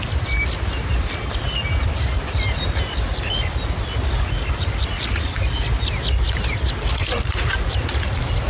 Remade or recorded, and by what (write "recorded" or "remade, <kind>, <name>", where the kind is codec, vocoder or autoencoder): recorded